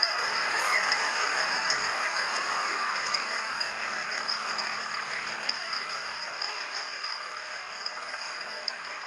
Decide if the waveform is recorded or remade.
remade